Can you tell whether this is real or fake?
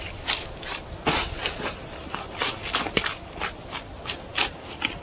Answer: real